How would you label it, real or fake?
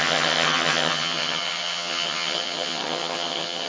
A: fake